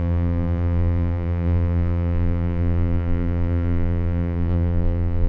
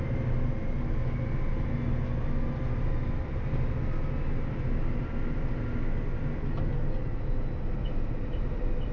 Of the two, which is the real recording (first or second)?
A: second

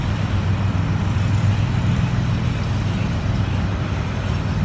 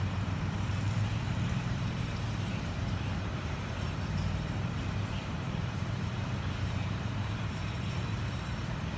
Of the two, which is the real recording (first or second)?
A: first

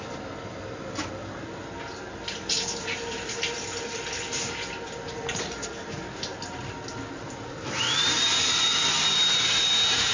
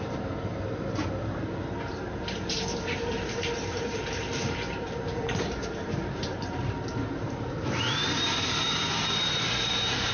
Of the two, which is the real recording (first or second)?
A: first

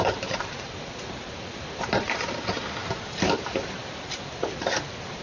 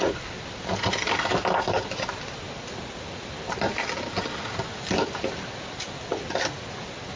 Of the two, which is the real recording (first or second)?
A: second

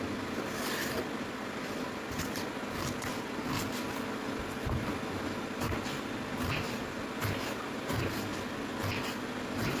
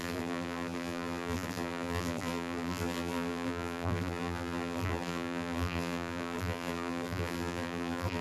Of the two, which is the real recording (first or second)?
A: first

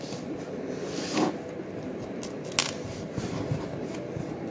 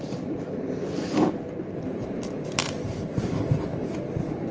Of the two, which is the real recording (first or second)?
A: first